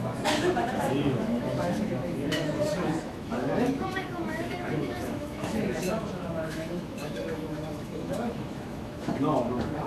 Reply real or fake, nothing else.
fake